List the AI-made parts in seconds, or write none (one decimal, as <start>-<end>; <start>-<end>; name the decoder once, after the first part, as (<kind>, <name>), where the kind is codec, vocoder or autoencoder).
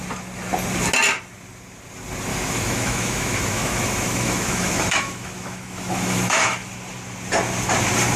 2.3-6.7 (autoencoder, DAC-VAE)